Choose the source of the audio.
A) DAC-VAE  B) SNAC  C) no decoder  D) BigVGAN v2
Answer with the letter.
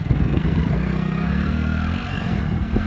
B